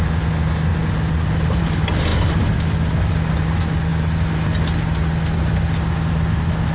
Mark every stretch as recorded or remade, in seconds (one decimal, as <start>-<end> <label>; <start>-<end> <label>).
0.0-6.7 recorded